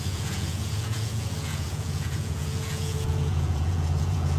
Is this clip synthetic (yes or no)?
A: yes